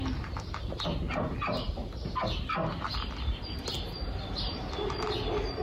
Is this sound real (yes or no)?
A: yes